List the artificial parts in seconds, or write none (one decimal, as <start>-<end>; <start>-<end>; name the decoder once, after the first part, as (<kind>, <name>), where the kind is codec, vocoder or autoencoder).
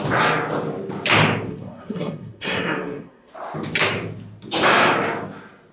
1.5-3.3 (codec, SNAC)